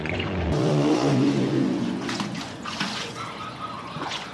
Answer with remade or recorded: remade